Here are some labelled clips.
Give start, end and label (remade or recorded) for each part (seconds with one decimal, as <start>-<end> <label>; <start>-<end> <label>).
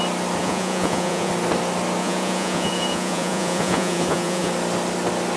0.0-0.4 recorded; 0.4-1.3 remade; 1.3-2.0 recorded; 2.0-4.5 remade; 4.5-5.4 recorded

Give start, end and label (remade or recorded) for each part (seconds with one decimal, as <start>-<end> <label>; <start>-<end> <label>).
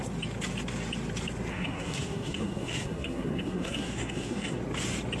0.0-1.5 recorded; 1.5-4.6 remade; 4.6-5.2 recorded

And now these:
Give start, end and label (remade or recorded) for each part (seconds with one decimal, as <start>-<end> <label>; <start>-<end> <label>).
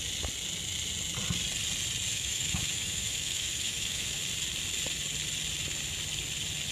0.0-2.1 recorded; 2.1-4.2 remade; 4.2-6.7 recorded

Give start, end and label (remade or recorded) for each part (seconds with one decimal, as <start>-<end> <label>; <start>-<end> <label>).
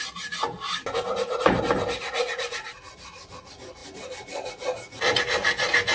0.0-5.9 recorded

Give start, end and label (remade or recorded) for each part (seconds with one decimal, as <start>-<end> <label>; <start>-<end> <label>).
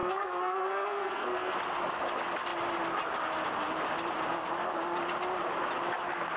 0.0-1.6 remade; 1.6-6.4 recorded